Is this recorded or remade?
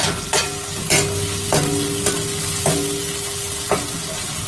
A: recorded